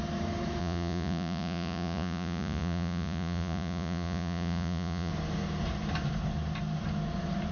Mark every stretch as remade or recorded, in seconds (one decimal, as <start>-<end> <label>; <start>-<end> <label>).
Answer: 0.0-0.6 recorded; 0.6-5.1 remade; 5.1-7.5 recorded